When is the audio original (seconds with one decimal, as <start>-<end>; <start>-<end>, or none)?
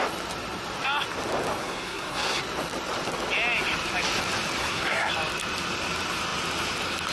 0.0-1.6; 2.4-4.6; 5.1-7.1